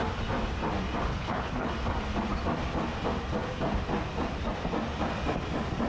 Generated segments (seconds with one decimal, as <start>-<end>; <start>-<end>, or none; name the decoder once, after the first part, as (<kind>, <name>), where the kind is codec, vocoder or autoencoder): 1.1-1.7 (codec, HILCodec)